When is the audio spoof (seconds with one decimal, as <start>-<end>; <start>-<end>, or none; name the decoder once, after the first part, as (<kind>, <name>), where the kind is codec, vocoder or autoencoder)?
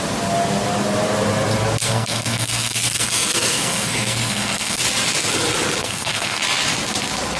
1.8-4.8 (codec, SNAC); 5.8-6.4